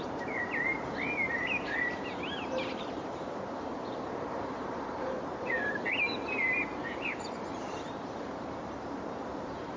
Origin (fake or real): fake